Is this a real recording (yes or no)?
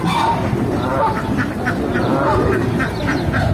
yes